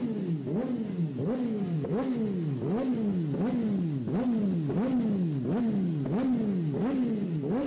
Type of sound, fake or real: real